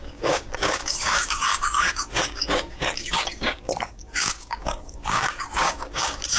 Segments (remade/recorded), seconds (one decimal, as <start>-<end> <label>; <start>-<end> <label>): 0.0-6.4 remade